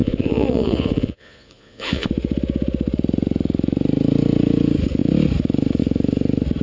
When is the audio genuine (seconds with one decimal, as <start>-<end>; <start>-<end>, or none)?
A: 2.1-6.6